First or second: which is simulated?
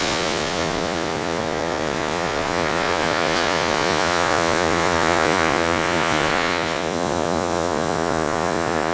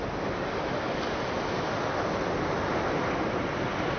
first